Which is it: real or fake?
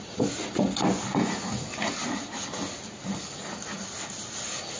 real